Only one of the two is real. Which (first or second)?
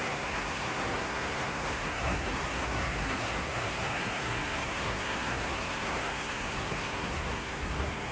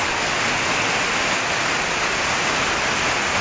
second